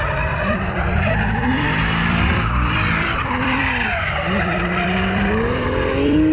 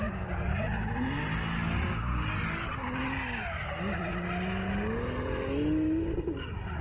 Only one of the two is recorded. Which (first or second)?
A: second